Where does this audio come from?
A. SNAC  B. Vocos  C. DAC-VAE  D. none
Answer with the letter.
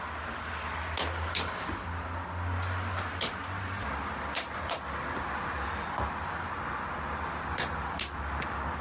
D